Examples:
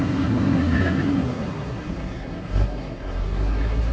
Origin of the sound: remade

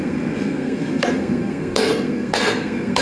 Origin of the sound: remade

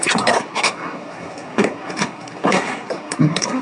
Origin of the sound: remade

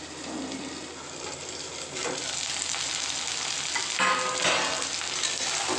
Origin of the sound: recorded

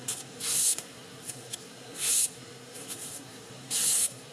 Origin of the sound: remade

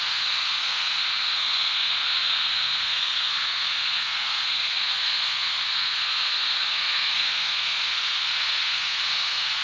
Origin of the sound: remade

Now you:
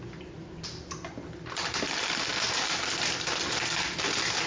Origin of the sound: recorded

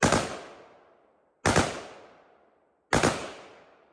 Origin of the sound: recorded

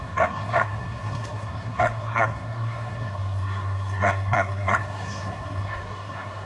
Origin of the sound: remade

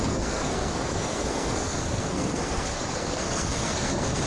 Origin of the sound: remade